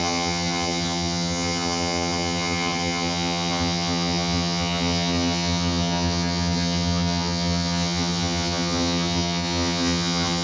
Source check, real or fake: fake